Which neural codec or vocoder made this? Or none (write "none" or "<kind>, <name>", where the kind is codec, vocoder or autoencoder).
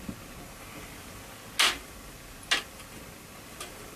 none